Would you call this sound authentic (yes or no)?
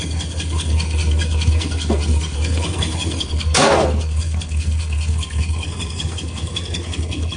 no